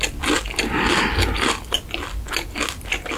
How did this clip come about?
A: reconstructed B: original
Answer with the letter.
B